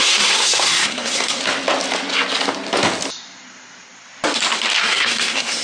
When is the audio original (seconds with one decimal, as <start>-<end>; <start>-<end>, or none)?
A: 1.4-4.8